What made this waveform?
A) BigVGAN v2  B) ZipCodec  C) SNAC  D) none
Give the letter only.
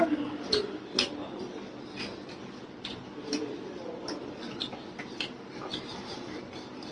D